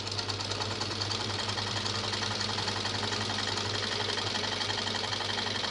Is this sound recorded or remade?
recorded